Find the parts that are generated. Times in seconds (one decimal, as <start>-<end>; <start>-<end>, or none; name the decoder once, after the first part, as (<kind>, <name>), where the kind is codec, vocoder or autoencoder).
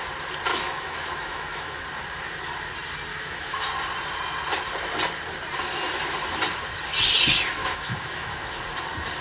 0.5-1.8 (autoencoder, DAC-VAE); 3.1-3.7; 7.6-8.6